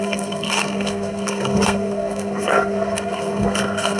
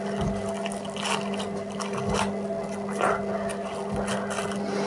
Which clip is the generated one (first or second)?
first